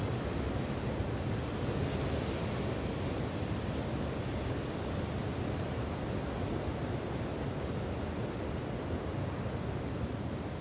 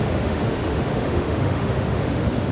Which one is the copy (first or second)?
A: second